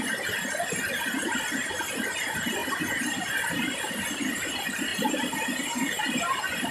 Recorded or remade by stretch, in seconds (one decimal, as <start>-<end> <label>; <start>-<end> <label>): 0.0-2.6 recorded; 2.6-3.9 remade; 3.9-4.9 recorded; 4.9-6.7 remade

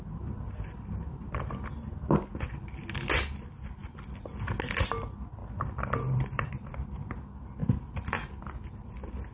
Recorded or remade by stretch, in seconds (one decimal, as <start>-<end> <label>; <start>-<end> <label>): 0.0-5.4 recorded; 5.4-6.5 remade; 6.5-9.3 recorded

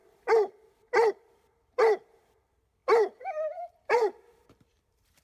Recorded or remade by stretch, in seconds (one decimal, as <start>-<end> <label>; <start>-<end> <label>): 0.0-5.2 remade

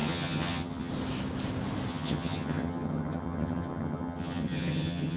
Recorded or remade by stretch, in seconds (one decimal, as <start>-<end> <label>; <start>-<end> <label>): 0.0-0.9 remade; 0.9-1.9 recorded; 1.9-5.2 remade

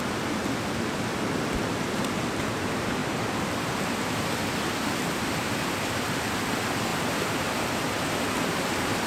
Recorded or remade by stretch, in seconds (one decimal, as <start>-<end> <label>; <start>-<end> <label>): 0.0-0.4 remade; 0.4-1.7 recorded; 1.7-3.0 remade; 3.0-5.4 recorded; 5.4-9.1 remade

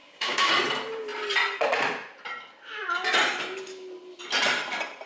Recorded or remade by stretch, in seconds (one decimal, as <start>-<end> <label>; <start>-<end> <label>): 0.0-0.5 remade; 0.5-5.1 recorded

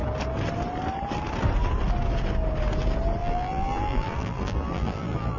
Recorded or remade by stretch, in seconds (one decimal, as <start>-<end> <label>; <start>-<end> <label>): 0.0-3.2 recorded; 3.2-5.4 remade